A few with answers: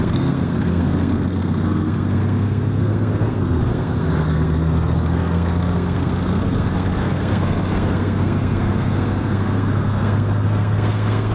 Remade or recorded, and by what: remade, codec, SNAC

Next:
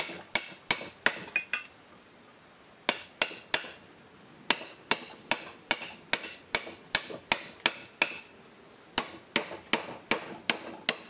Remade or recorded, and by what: recorded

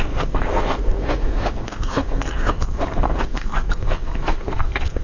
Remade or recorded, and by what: remade, codec, SNAC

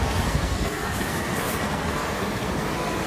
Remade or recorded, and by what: remade, codec, SNAC